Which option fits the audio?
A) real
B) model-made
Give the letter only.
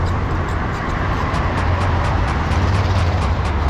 B